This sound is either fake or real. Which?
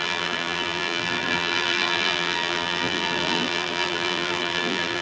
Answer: fake